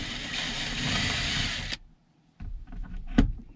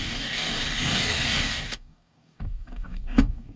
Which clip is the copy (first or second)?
second